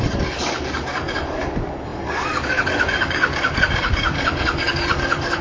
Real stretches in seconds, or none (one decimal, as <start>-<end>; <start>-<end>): none